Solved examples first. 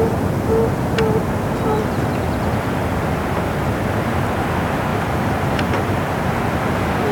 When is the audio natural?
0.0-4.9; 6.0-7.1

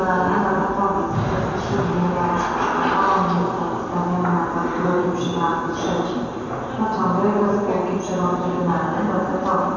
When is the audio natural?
0.0-5.5; 6.5-9.8

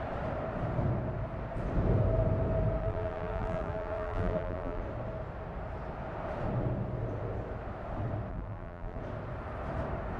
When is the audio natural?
0.0-2.8; 4.8-8.3; 9.0-10.2

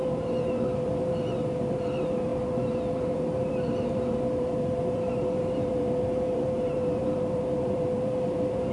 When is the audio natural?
none